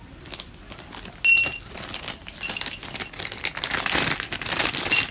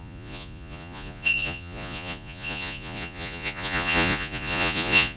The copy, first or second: second